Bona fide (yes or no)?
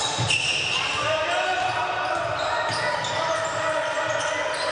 yes